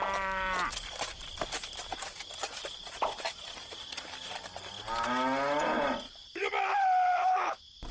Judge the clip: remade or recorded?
recorded